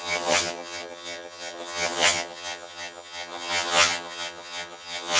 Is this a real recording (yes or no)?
no